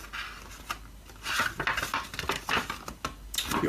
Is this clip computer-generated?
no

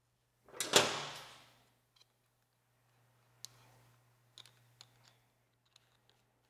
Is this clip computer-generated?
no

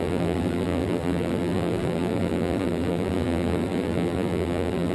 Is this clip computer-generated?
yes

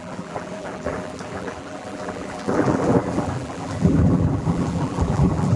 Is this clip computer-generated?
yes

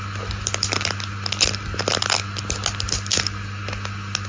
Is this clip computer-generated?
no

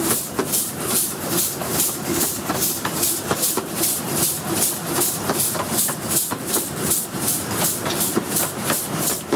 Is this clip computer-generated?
yes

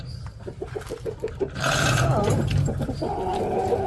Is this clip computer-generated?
yes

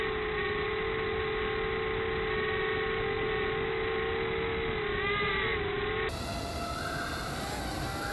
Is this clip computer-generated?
no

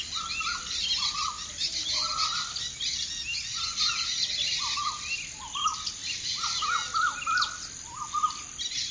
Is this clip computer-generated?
no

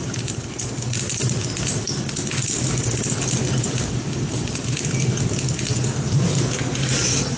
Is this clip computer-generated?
no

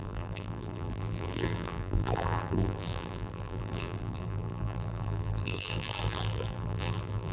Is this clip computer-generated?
yes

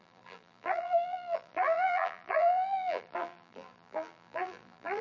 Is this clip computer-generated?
yes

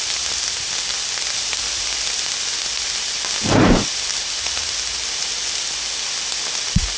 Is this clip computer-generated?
no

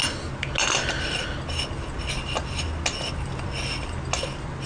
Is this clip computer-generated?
no